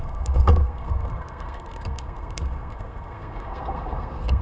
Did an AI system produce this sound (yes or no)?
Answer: yes